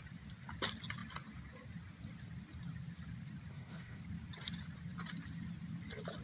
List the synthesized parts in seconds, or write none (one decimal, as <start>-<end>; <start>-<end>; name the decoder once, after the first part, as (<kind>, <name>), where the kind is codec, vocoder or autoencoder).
3.5-4.0 (codec, SNAC)